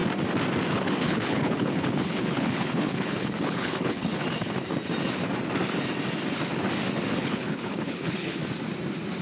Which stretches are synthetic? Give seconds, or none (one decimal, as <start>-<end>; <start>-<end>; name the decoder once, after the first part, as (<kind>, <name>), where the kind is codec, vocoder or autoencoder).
0.7-4.1 (codec, HILCodec); 7.1-8.4